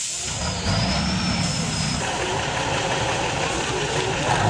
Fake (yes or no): no